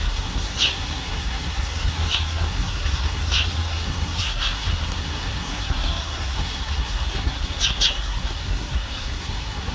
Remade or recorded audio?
remade